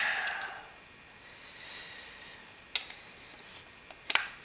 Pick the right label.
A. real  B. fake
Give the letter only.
A